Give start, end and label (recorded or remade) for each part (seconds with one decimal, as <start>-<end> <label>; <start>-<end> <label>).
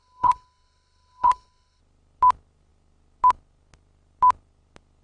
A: 0.0-1.8 remade; 1.8-5.0 recorded